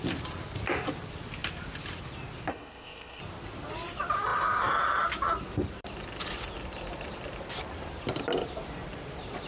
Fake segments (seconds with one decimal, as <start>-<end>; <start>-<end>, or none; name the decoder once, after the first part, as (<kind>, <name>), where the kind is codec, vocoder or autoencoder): 2.5-3.2 (codec, ZipCodec)